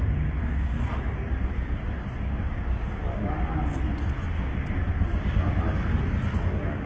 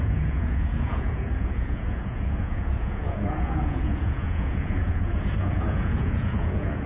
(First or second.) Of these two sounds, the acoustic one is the first